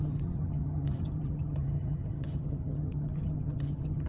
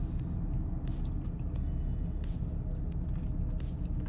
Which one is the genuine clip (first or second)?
second